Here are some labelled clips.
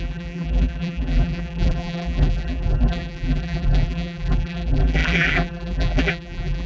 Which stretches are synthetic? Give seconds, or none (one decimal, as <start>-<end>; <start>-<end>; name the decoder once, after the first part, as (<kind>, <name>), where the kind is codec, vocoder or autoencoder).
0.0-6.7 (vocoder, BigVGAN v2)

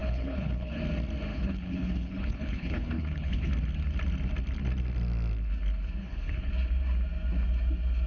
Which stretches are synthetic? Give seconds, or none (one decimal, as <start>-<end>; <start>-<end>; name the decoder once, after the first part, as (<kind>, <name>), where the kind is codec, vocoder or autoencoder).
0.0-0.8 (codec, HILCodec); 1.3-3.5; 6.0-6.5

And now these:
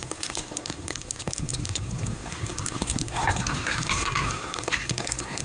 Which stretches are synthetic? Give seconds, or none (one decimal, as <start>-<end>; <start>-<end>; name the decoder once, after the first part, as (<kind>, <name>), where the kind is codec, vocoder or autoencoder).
0.0-5.4 (codec, SNAC)

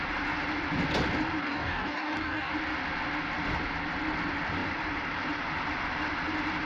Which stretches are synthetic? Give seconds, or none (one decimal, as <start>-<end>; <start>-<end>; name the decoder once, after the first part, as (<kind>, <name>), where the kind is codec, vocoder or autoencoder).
1.4-2.5 (codec, DAC)

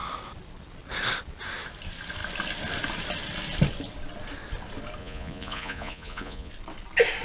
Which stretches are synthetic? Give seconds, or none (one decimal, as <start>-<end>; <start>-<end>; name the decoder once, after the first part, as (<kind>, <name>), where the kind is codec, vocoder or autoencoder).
5.0-6.5 (vocoder, Vocos)

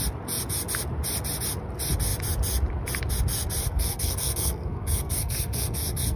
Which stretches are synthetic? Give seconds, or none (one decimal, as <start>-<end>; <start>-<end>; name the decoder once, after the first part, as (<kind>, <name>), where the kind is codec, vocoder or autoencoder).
3.6-6.2 (codec, SNAC)